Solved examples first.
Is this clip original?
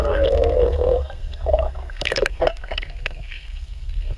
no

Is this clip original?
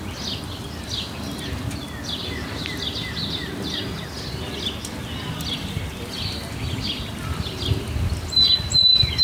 yes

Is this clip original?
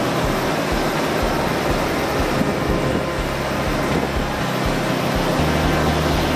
yes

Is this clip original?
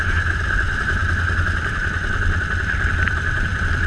yes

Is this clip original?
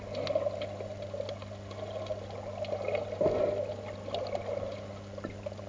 yes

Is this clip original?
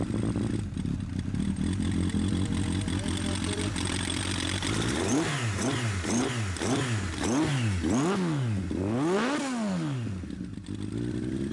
yes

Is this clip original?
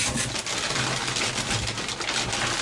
yes